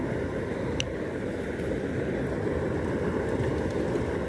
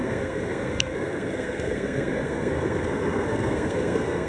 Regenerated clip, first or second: second